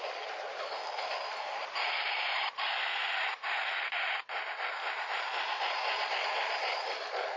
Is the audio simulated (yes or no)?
yes